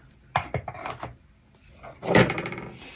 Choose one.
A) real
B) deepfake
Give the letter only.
A